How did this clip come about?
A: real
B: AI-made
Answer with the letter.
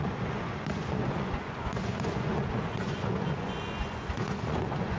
B